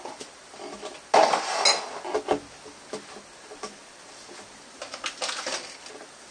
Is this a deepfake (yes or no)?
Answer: no